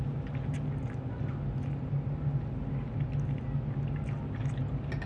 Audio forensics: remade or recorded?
recorded